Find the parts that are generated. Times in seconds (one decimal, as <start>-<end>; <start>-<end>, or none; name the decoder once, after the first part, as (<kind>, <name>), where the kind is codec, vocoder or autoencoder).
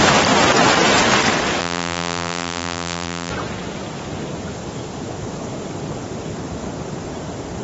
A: 1.6-3.3 (vocoder, BigVGAN v2)